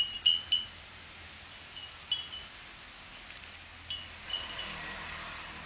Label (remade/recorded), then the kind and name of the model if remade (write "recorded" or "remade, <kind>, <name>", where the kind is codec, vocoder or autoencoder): recorded